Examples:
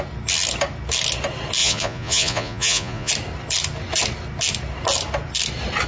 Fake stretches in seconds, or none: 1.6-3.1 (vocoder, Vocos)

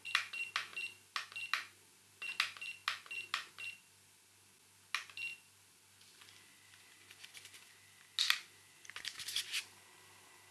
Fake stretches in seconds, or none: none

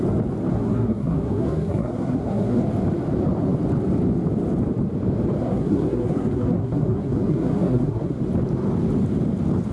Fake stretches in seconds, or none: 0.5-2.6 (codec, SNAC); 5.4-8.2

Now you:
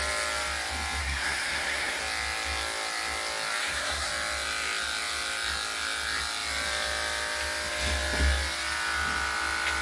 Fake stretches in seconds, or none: 1.0-2.0 (codec, SNAC); 3.6-4.1